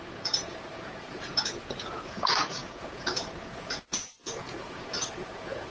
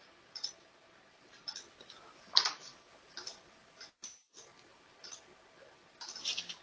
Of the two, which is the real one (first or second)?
second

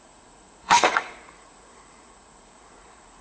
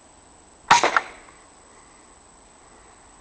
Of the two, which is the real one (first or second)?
second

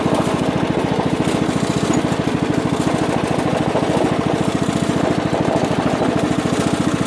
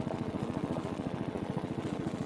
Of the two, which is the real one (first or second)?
first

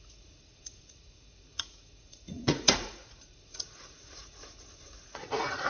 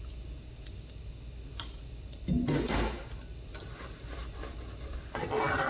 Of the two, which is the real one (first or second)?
second